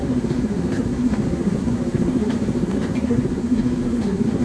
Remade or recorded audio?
remade